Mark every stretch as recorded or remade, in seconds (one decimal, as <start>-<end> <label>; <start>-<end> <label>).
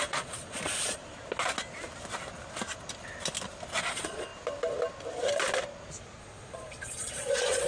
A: 0.0-1.0 remade; 1.0-3.8 recorded; 3.8-4.3 remade; 4.3-6.2 recorded; 6.2-7.7 remade